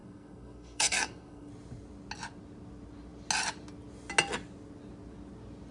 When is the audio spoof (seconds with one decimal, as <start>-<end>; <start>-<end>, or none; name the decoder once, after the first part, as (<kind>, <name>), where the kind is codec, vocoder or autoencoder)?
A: 0.0-1.5 (codec, SNAC)